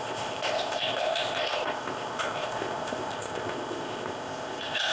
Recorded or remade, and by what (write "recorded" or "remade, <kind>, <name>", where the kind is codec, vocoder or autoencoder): remade, codec, ZipCodec